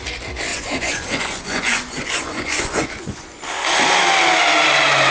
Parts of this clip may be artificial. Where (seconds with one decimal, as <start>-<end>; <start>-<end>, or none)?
0.5-3.4